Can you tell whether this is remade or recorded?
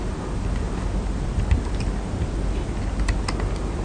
recorded